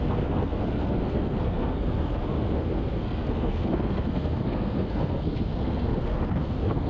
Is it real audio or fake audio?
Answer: fake